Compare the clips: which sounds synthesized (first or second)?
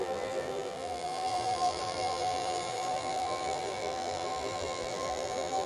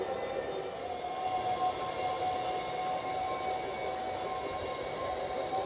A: first